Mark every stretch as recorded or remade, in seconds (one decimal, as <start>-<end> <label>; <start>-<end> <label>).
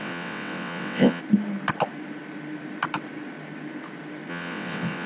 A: 0.0-1.2 remade; 1.2-4.3 recorded; 4.3-5.1 remade